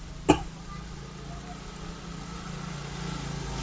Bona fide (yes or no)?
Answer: yes